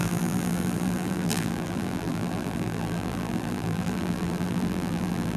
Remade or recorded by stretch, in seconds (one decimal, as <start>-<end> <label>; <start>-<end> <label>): 0.0-5.4 remade